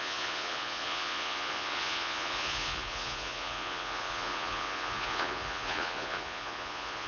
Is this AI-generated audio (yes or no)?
yes